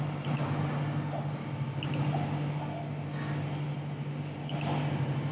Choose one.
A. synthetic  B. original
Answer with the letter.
B